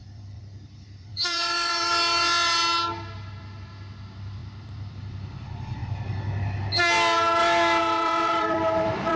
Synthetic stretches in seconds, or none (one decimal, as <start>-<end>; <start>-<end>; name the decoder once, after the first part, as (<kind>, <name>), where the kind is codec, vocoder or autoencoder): 0.0-1.9 (vocoder, BigVGAN v2); 3.4-5.8; 7.8-9.2